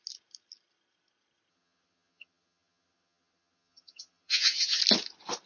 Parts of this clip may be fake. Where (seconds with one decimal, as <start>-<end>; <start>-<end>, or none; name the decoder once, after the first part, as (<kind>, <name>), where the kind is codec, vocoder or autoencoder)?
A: 1.5-4.8 (vocoder, HiFi-GAN)